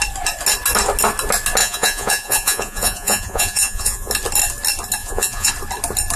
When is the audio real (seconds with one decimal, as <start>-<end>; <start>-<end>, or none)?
0.0-1.6; 4.1-5.0; 5.5-6.2